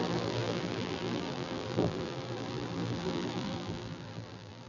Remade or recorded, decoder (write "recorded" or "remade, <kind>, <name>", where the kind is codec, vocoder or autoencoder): remade, vocoder, BigVGAN v2